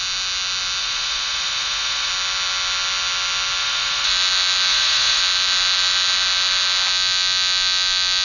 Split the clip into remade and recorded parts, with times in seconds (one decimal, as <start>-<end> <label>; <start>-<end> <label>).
0.0-0.8 recorded; 0.8-2.1 remade; 2.1-3.6 recorded; 3.6-4.1 remade; 4.1-4.7 recorded; 4.7-5.2 remade; 5.2-8.2 recorded